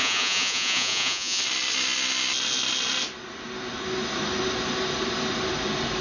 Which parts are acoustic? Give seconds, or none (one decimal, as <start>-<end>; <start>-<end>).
1.4-6.0